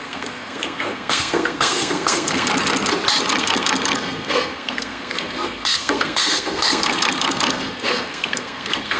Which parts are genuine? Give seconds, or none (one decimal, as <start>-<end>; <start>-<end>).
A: 2.5-3.4